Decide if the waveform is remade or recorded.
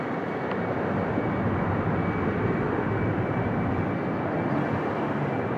recorded